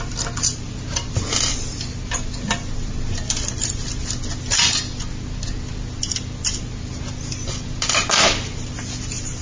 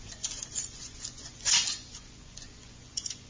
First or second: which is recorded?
first